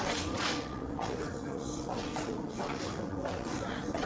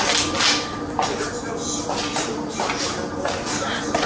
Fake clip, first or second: first